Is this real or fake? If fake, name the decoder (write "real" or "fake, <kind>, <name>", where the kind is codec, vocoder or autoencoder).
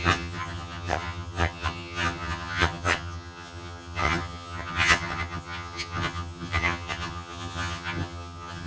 fake, vocoder, HiFi-GAN